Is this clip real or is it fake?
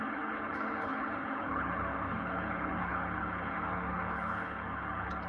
fake